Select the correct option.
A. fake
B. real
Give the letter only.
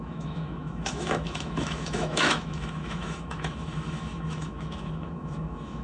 A